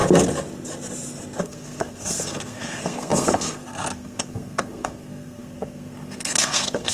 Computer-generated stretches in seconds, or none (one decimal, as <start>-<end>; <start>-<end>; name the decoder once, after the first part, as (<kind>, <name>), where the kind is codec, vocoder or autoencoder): 1.4-6.9 (codec, SNAC)